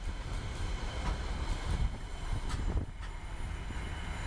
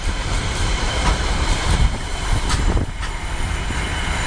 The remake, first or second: second